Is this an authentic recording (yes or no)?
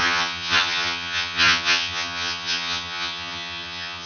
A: no